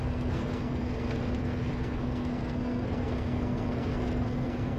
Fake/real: fake